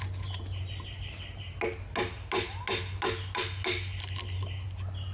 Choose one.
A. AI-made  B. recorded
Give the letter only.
B